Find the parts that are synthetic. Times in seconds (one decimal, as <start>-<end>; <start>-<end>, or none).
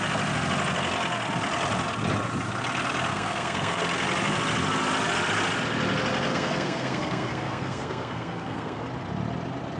3.1-3.8; 6.3-8.8